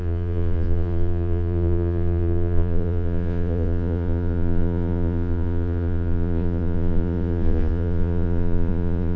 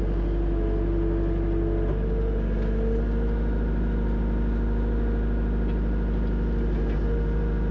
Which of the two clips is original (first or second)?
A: second